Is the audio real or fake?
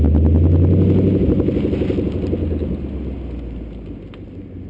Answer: real